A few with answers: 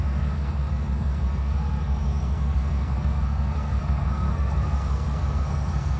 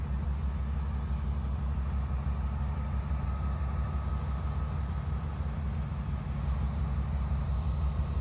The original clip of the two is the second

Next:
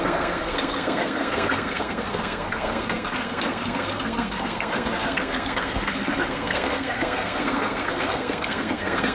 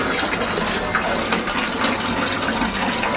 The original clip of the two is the second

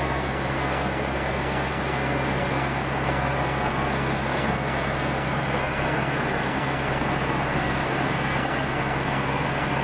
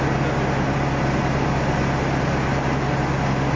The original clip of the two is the second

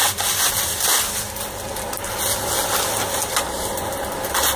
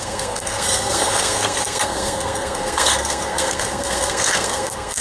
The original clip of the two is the first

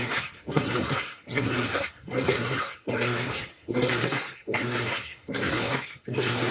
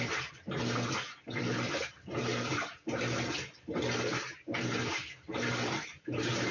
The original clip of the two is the second